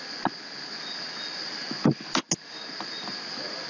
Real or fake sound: real